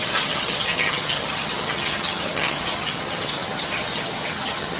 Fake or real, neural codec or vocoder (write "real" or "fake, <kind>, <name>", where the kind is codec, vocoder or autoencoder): fake, vocoder, HiFi-GAN